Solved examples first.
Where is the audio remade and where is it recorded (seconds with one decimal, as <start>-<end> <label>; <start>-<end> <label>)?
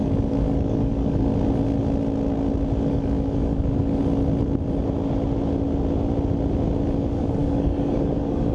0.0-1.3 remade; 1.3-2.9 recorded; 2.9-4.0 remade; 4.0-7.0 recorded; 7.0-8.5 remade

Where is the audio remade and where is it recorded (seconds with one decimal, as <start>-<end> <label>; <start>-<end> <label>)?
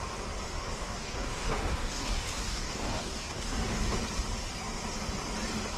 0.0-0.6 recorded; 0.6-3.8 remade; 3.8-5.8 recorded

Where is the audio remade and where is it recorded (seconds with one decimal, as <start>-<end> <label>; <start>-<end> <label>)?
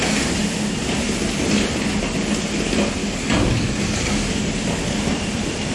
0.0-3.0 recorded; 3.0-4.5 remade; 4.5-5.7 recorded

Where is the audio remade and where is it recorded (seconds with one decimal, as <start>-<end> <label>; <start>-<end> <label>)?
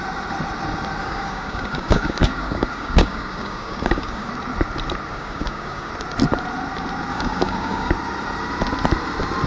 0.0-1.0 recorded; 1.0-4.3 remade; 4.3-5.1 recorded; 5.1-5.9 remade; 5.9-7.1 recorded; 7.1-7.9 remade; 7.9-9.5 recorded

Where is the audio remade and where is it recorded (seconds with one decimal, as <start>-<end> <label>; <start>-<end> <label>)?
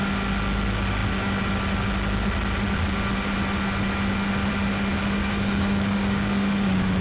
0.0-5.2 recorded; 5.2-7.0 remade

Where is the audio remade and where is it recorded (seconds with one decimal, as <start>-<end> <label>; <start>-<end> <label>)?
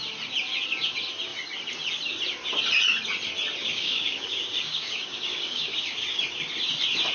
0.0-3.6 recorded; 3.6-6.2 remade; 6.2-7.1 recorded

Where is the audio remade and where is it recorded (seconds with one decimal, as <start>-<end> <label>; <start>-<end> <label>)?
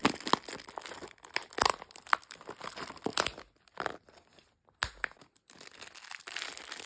0.0-6.9 recorded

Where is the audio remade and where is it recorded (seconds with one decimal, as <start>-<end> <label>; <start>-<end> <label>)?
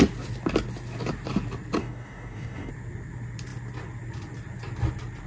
0.0-1.8 recorded; 1.8-2.7 remade; 2.7-5.3 recorded